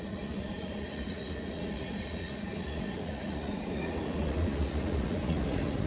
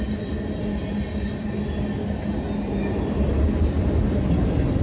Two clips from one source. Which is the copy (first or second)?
first